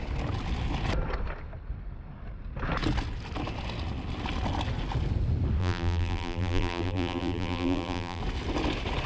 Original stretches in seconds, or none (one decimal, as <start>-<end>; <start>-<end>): 0.0-5.6; 8.2-9.1